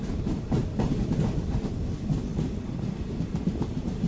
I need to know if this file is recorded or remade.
recorded